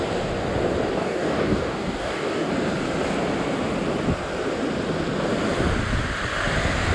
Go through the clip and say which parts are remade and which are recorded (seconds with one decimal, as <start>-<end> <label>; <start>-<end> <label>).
0.0-0.9 recorded; 0.9-2.5 remade; 2.5-6.9 recorded